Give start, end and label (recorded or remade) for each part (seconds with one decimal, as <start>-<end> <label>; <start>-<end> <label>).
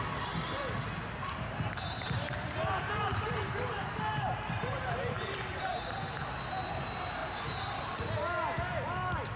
0.0-3.1 recorded; 3.1-5.7 remade; 5.7-9.4 recorded